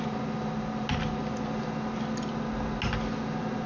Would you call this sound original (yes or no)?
yes